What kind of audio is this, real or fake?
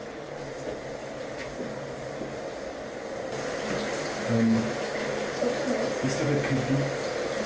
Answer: real